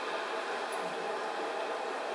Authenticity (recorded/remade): recorded